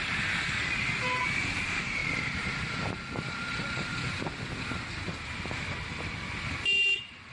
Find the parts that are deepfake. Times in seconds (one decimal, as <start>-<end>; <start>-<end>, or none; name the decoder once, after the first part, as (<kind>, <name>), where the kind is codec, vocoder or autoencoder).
none